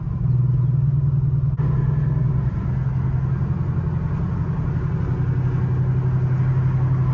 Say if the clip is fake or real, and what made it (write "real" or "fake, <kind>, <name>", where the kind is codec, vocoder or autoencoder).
real